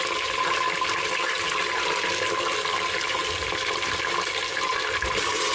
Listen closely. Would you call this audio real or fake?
real